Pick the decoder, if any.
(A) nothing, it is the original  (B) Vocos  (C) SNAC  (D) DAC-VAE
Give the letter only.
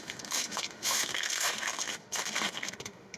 D